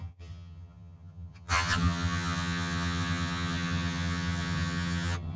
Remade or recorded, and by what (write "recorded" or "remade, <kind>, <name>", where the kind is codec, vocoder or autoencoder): remade, vocoder, HiFi-GAN